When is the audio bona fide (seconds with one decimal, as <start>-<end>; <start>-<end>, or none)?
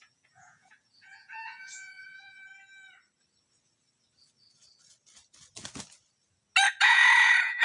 2.5-6.8